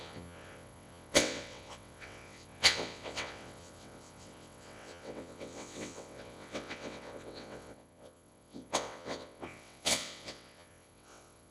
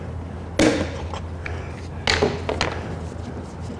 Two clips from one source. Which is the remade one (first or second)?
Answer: first